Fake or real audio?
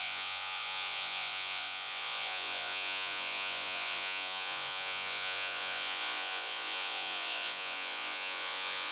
fake